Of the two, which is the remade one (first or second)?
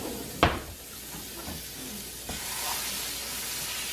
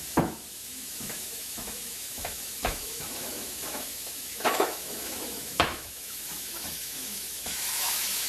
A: second